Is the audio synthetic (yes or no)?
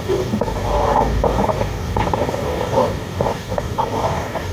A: yes